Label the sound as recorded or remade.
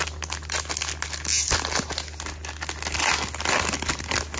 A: recorded